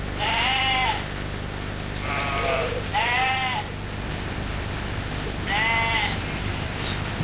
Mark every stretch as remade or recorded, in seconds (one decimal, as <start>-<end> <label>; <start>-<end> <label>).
0.0-7.2 recorded